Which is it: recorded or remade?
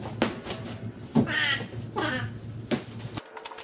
recorded